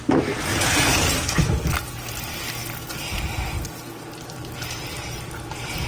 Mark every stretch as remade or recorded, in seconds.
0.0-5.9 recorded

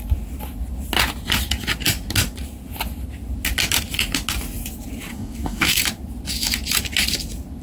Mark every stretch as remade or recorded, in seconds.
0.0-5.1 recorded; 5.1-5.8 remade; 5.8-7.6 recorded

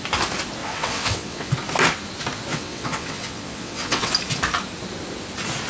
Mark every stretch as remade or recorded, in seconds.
0.0-0.6 recorded; 0.6-1.5 remade; 1.5-2.5 recorded; 2.5-4.1 remade; 4.1-5.7 recorded